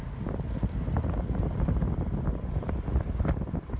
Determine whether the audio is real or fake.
real